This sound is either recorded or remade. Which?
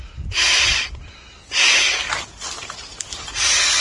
recorded